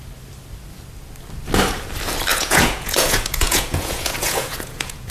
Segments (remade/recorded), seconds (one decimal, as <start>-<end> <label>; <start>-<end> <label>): 0.0-2.3 recorded; 2.3-5.1 remade